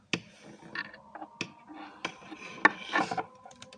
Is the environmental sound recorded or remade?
recorded